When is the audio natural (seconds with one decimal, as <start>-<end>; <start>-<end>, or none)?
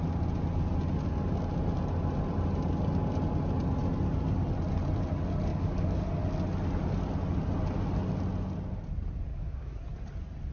0.0-5.5; 6.0-9.3; 9.8-10.5